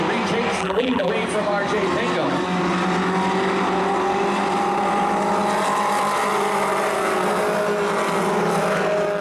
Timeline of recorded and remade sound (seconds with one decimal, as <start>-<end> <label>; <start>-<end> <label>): 0.0-0.6 recorded; 0.6-1.1 remade; 1.1-9.2 recorded